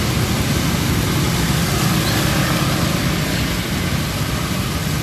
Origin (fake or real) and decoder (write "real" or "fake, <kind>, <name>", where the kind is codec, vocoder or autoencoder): real